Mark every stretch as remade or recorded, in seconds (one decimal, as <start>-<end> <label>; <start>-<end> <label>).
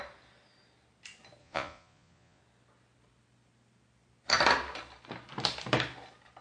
0.0-1.4 recorded; 1.4-2.4 remade; 2.4-6.4 recorded